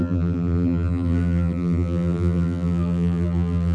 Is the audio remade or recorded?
remade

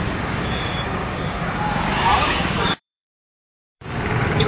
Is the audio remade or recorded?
remade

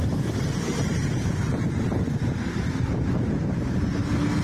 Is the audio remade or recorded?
remade